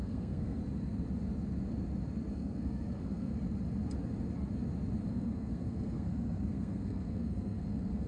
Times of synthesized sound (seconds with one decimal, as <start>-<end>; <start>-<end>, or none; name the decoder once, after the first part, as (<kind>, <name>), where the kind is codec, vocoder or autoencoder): 0.0-0.6 (codec, SNAC); 2.3-3.3; 5.1-8.1